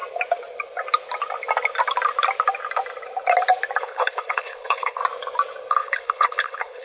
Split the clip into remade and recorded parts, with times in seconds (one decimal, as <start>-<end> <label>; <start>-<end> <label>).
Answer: 0.0-3.8 recorded; 3.8-5.0 remade; 5.0-5.7 recorded; 5.7-6.8 remade